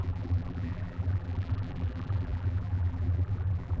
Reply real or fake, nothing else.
fake